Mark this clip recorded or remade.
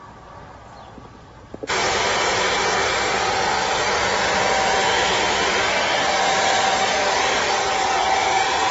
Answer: recorded